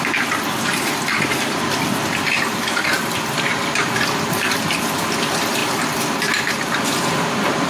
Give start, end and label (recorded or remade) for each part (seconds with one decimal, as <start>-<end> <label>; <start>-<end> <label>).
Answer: 0.0-7.7 remade